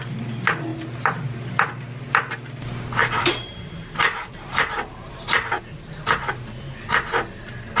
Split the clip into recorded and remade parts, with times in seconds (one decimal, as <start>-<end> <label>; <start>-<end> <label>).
0.0-3.0 recorded; 3.0-5.6 remade; 5.6-7.8 recorded